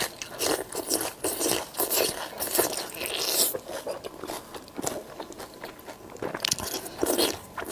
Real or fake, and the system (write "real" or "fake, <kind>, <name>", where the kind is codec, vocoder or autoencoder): real